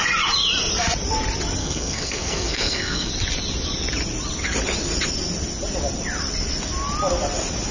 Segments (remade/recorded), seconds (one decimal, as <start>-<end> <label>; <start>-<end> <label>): 0.0-1.6 recorded; 1.6-3.1 remade; 3.1-7.7 recorded